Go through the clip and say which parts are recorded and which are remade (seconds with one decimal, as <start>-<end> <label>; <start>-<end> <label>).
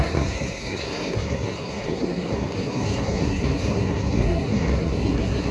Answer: 0.0-5.5 remade